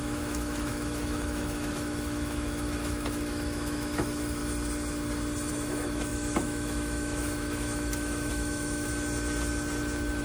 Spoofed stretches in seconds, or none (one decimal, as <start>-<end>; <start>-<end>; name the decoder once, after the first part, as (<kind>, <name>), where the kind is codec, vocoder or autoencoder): 0.0-4.4 (autoencoder, DAC-VAE); 5.5-8.9